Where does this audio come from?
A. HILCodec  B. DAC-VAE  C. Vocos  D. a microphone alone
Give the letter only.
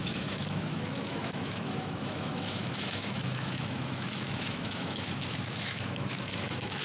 B